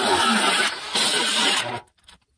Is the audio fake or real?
fake